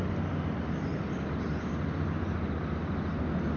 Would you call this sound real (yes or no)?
yes